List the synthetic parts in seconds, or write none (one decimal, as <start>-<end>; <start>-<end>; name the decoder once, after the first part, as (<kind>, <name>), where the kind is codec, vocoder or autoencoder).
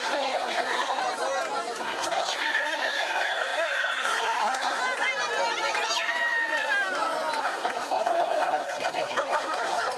0.0-1.0 (codec, SNAC); 1.8-4.8; 7.4-10.0